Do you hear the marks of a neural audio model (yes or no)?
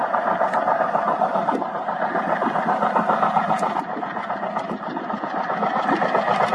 no